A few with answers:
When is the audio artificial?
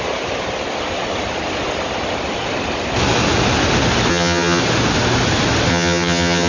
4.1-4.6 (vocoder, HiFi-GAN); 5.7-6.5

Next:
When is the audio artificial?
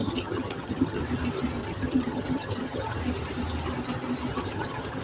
0.0-1.0 (vocoder, HiFi-GAN); 1.6-3.0; 4.3-5.0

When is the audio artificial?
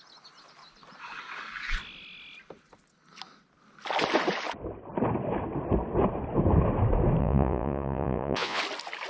7.2-8.6 (vocoder, Vocos)